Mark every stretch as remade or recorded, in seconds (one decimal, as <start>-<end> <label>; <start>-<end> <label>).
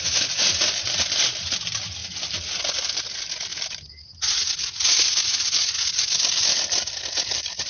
0.0-7.7 recorded